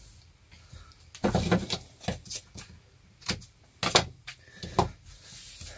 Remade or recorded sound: recorded